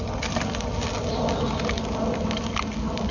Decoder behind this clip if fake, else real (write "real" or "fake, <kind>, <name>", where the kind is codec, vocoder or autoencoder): real